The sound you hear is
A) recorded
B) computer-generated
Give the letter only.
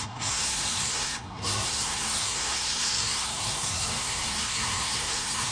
B